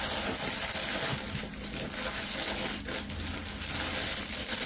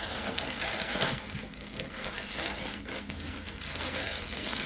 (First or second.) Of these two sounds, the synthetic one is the second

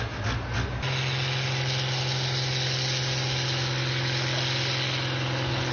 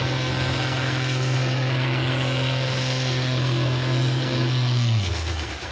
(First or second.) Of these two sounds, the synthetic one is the second